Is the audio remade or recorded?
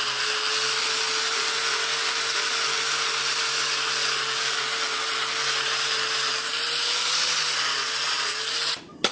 recorded